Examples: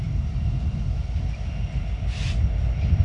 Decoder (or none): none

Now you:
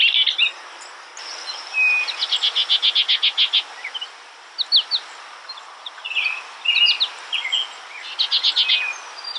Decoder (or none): none